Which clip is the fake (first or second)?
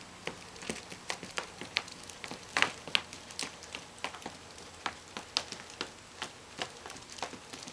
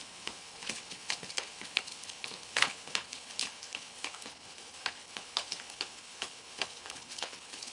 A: second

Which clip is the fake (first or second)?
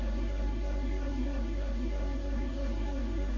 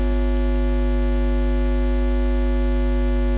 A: first